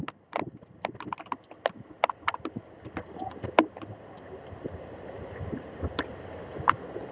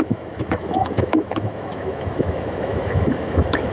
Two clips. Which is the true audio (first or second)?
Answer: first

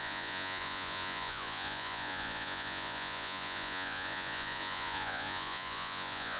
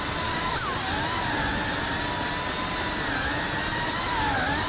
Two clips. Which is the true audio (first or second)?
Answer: second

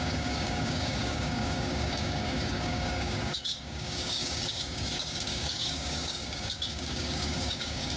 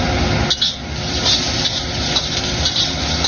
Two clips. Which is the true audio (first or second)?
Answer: second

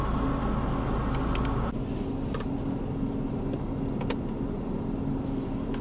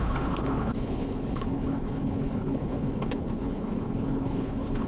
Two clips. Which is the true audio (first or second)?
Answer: first